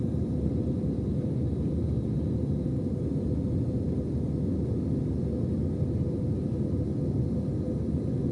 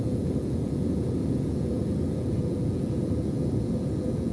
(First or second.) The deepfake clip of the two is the second